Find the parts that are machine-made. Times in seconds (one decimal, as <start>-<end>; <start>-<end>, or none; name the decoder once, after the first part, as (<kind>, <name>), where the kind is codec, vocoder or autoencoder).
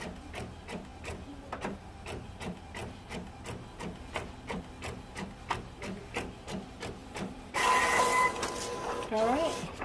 7.0-7.7 (vocoder, BigVGAN v2)